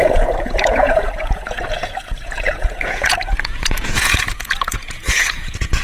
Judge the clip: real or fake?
fake